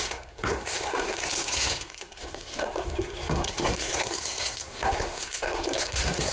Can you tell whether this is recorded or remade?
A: remade